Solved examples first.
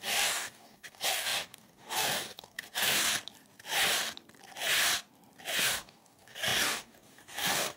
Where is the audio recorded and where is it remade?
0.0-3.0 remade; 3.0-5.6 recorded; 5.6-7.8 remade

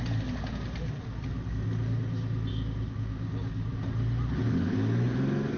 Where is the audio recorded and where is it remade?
0.0-2.5 recorded; 2.5-3.7 remade; 3.7-5.6 recorded

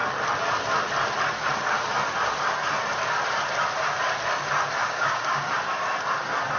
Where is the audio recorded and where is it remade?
0.0-4.8 recorded; 4.8-5.5 remade; 5.5-6.6 recorded

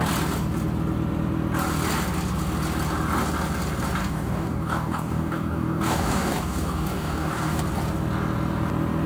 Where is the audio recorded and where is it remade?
0.0-4.0 recorded; 4.0-7.6 remade; 7.6-9.1 recorded

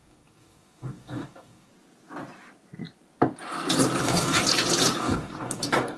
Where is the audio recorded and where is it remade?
0.0-1.7 remade; 1.7-4.0 recorded; 4.0-4.4 remade; 4.4-5.0 recorded; 5.0-6.0 remade

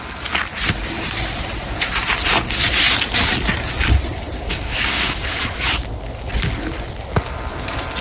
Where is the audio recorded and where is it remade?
0.0-4.5 recorded; 4.5-5.4 remade; 5.4-8.0 recorded

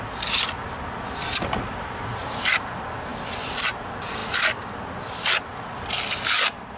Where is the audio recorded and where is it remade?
0.0-6.8 recorded

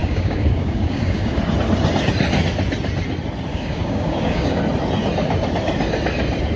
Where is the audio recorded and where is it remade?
0.0-1.4 remade; 1.4-3.5 recorded; 3.5-4.6 remade; 4.6-6.6 recorded